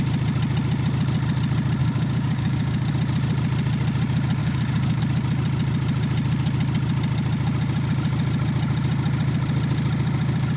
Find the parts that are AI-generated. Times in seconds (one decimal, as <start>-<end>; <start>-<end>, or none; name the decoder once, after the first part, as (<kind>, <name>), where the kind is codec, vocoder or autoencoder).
1.8-2.9 (codec, DAC); 4.4-5.0